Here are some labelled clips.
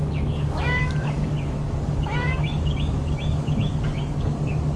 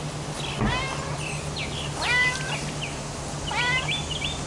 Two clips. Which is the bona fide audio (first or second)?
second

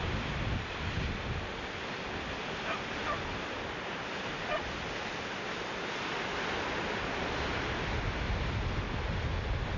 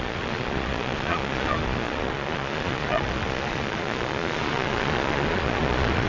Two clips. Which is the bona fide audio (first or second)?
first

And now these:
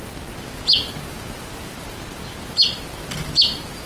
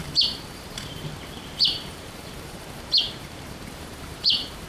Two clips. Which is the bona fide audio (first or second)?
first